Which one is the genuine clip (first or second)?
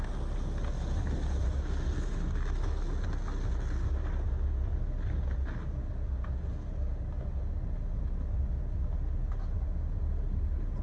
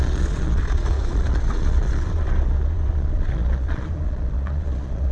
first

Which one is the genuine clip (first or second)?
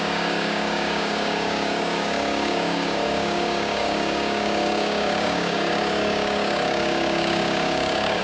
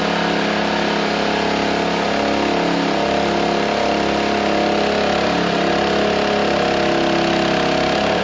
second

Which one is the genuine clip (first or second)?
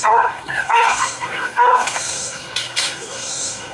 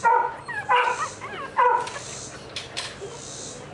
second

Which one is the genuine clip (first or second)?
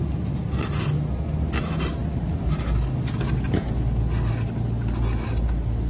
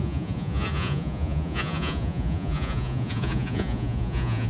first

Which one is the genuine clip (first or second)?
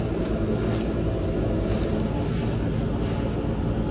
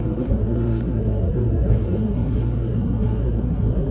first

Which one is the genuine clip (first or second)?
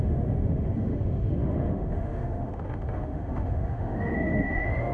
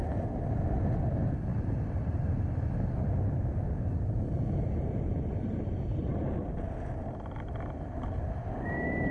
second